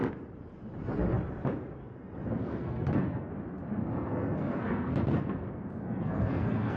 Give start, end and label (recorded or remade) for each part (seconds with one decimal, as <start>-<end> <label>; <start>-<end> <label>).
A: 0.0-2.4 recorded; 2.4-3.3 remade; 3.3-3.8 recorded; 3.8-6.8 remade